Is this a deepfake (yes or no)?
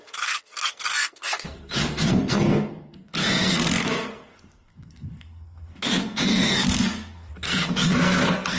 yes